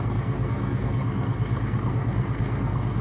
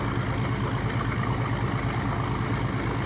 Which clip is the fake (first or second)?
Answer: first